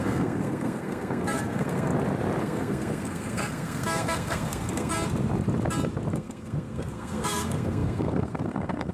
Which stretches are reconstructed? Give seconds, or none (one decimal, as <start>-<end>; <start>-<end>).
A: 0.0-1.9; 2.4-4.9; 6.1-8.9

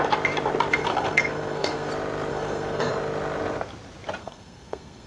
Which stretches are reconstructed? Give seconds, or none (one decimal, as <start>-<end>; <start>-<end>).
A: 0.7-1.9; 2.3-2.9; 4.2-5.1

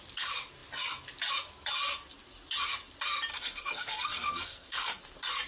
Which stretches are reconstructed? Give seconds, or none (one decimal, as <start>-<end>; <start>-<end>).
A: 3.3-5.0

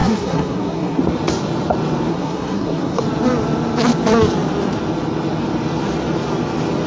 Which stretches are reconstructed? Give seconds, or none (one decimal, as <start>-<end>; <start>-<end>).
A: 0.0-1.0; 2.1-3.0